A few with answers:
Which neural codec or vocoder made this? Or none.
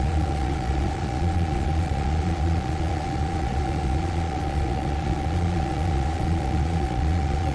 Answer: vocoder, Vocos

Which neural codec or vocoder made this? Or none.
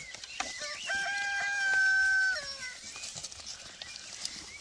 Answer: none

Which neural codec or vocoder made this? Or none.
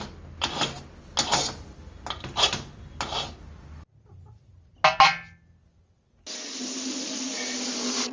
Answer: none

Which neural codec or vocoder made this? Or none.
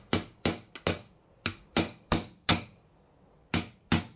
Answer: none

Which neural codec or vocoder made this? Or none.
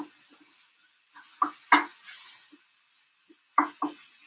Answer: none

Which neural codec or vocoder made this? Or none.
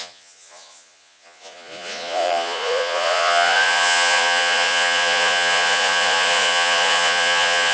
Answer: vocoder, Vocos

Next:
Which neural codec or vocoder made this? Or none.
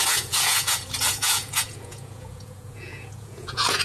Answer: vocoder, Vocos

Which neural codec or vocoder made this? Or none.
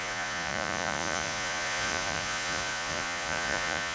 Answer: vocoder, Vocos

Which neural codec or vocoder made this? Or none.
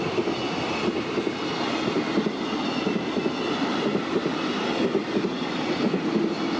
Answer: none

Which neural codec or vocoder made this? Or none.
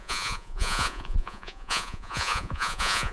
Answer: vocoder, Vocos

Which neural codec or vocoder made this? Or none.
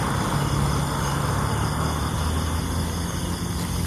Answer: none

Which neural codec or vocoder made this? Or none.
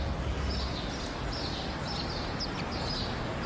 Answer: none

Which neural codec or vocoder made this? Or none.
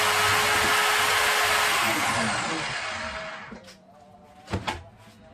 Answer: none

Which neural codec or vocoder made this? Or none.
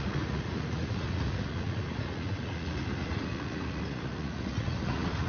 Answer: vocoder, Vocos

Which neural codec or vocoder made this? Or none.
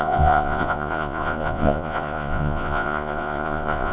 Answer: vocoder, Vocos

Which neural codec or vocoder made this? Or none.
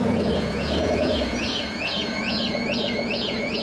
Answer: vocoder, Vocos